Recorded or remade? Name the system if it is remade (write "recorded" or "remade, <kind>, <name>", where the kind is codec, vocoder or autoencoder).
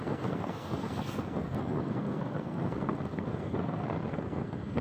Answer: remade, codec, SNAC